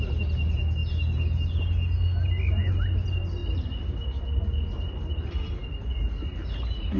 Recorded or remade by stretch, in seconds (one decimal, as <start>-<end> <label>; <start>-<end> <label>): 0.0-7.0 recorded